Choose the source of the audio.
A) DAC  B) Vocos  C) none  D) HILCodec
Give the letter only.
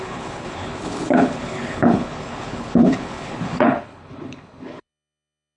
D